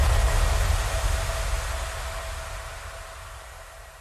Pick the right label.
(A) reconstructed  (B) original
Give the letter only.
B